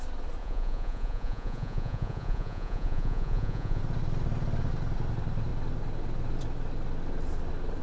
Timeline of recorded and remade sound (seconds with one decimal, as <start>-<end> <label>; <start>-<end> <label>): 0.0-0.4 recorded; 0.4-3.8 remade; 3.8-7.8 recorded